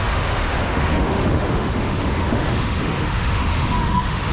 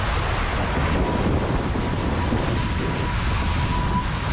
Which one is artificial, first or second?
first